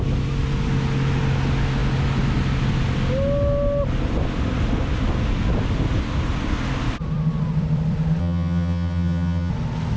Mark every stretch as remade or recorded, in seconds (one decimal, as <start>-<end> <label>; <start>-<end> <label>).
0.0-8.2 recorded; 8.2-9.5 remade; 9.5-10.0 recorded